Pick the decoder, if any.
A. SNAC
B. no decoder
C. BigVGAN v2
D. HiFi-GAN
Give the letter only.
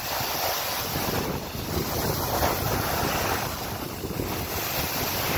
B